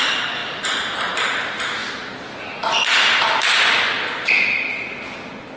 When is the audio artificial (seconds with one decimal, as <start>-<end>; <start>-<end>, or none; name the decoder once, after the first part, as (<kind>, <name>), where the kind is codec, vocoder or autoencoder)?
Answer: none